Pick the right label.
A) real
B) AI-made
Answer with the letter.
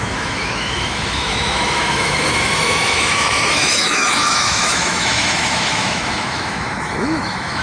B